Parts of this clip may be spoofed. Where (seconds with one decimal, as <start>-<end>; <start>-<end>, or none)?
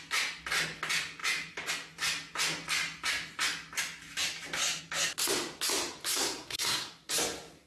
6.1-6.9